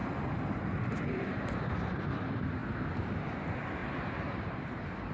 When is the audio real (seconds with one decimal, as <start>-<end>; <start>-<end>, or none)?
0.0-3.8; 4.6-5.1